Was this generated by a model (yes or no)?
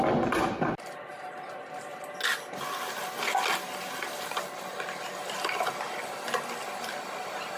no